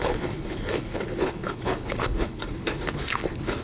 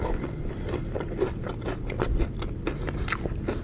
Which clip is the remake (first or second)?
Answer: first